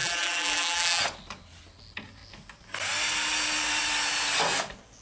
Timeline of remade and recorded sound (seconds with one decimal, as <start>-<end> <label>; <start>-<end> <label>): 0.0-1.0 remade; 1.0-5.0 recorded